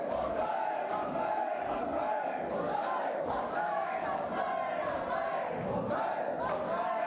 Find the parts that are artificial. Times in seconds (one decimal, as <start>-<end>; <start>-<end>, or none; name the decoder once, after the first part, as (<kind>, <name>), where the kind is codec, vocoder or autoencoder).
0.0-4.3 (codec, DAC); 6.2-7.1